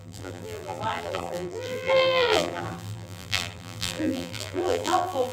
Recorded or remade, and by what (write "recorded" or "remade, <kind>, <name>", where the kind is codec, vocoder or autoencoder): remade, vocoder, BigVGAN v2